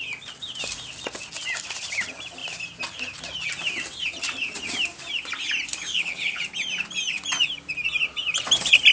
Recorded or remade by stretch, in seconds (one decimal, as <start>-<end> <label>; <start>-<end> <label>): 0.0-5.9 recorded; 5.9-6.4 remade; 6.4-8.9 recorded